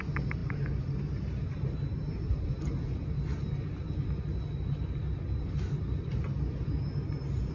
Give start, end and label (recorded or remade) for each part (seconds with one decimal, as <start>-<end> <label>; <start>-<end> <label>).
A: 0.0-7.5 recorded